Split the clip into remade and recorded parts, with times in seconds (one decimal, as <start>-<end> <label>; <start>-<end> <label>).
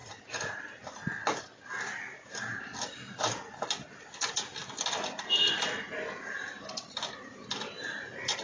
0.0-8.4 recorded